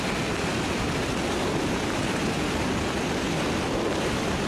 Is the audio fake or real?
real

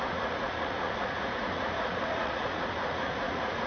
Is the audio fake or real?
fake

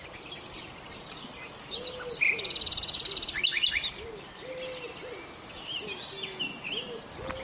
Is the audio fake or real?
real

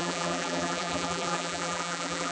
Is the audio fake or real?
fake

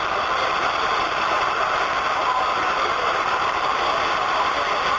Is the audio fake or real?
real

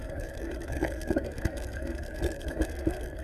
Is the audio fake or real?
fake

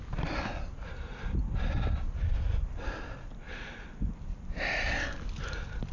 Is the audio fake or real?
real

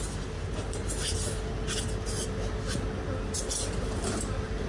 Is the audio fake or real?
real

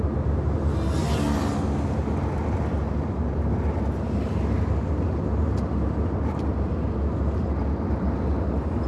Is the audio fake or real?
real